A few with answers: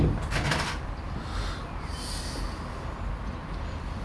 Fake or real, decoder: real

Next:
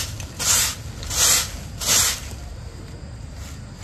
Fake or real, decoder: real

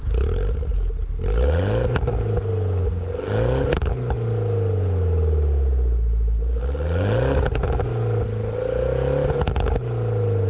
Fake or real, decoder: real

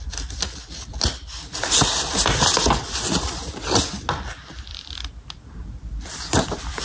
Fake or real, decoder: real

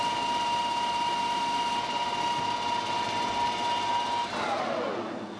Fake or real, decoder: real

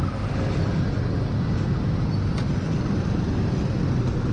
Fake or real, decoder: real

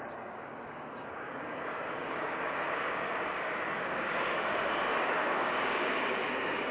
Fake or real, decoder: fake, codec, DAC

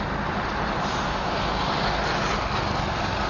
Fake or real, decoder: real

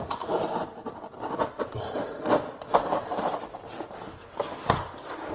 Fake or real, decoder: real